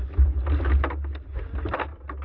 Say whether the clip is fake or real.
real